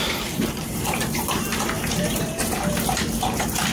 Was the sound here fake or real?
fake